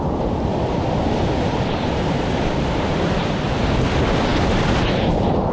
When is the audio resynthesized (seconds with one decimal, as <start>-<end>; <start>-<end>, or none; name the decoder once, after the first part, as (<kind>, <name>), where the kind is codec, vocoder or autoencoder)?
0.5-2.0 (vocoder, BigVGAN v2)